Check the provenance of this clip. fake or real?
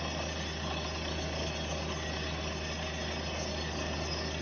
real